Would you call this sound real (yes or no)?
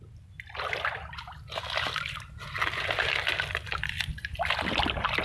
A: yes